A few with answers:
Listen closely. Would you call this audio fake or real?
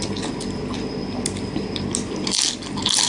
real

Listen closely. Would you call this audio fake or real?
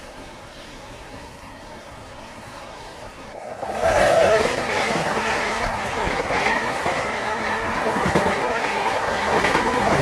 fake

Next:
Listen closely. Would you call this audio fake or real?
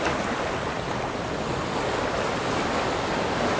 real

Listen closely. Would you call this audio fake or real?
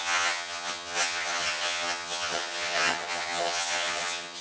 fake